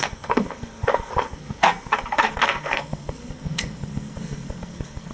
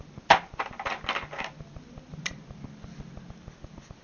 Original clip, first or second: second